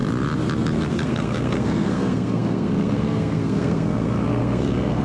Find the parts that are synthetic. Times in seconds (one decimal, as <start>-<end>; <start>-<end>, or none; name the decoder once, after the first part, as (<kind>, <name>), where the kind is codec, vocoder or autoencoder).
0.7-5.0 (codec, SNAC)